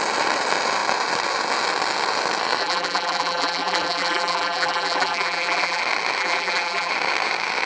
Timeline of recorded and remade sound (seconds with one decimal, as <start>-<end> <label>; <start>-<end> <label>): 0.0-2.6 recorded; 2.6-5.8 remade; 5.8-6.2 recorded; 6.2-6.9 remade; 6.9-7.7 recorded